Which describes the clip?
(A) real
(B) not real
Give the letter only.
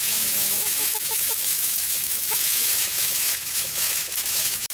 B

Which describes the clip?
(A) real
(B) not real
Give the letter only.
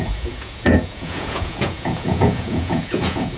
B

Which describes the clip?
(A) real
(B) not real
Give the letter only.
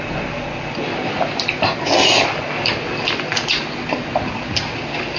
A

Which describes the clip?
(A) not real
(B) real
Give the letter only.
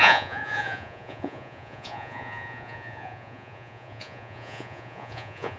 A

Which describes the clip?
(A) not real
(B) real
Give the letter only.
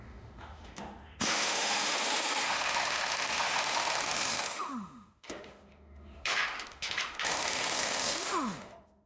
A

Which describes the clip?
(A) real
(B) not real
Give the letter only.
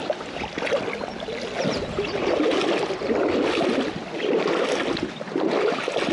A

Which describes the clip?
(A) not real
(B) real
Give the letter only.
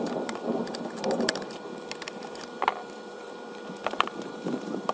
A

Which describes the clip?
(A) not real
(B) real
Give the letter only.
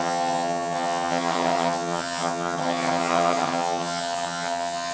A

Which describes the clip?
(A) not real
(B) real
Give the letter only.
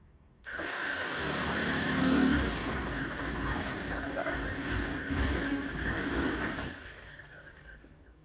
A